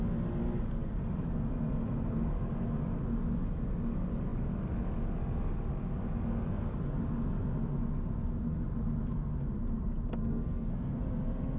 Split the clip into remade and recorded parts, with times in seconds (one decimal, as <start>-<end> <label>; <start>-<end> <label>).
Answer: 0.0-10.2 recorded; 10.2-11.0 remade; 11.0-11.6 recorded